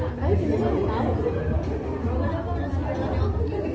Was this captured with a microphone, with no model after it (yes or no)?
yes